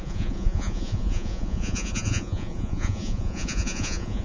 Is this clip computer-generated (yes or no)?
yes